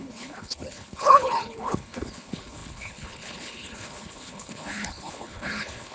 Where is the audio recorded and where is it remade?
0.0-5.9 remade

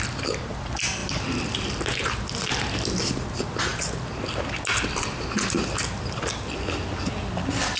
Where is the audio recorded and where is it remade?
0.0-7.8 recorded

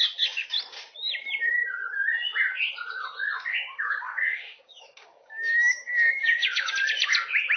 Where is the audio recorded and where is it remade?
0.0-3.5 recorded; 3.5-6.7 remade; 6.7-7.6 recorded

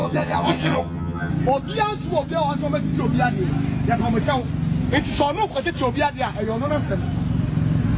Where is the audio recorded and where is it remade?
0.0-1.3 remade; 1.3-8.0 recorded